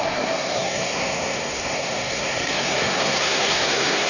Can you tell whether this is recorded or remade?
remade